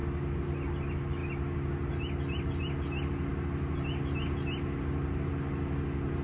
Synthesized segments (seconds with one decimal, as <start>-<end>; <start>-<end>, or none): none